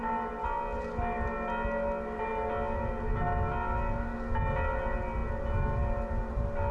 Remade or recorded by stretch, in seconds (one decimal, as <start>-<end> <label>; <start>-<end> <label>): 0.0-6.7 recorded